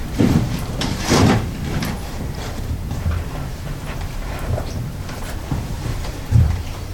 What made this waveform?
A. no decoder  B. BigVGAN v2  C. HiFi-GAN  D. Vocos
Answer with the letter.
B